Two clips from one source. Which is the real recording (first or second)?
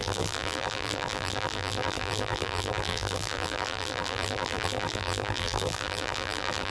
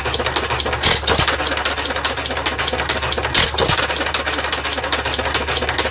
second